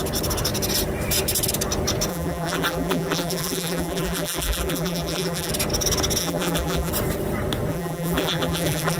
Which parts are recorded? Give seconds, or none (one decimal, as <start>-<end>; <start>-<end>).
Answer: 0.0-2.1; 5.5-6.2; 6.9-7.7